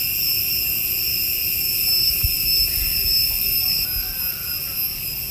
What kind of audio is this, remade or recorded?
recorded